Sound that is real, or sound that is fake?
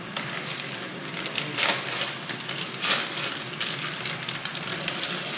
real